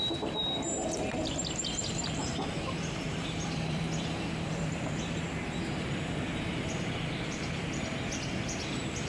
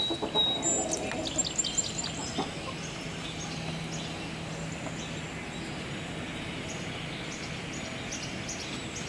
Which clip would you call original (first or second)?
second